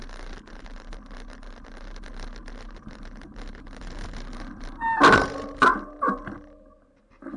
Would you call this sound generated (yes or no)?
no